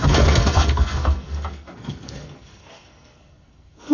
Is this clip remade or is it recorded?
remade